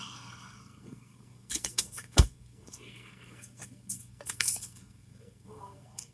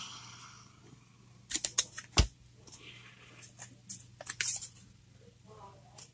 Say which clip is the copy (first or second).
first